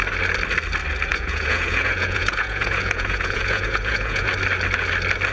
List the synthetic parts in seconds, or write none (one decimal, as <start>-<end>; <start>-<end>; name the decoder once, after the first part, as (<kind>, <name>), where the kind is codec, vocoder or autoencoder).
1.1-4.3 (vocoder, Vocos)